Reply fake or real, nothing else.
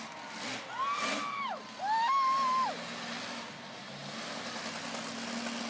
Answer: real